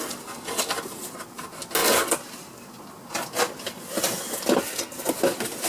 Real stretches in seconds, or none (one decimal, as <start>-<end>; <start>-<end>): 0.0-5.7

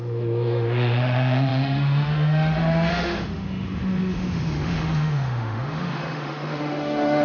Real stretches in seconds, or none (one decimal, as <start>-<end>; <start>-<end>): none

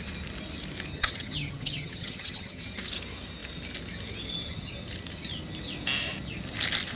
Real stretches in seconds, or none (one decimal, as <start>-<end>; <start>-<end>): 0.0-0.9; 2.6-7.0

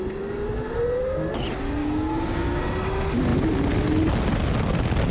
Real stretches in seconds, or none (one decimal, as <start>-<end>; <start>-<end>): 0.0-1.8; 2.6-5.1

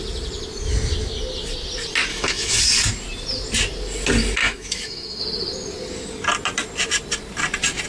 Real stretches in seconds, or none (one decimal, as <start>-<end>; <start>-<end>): 0.0-2.1; 2.6-4.4; 5.2-7.9